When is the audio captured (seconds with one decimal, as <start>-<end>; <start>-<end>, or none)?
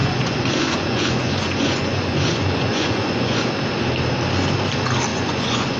3.5-5.1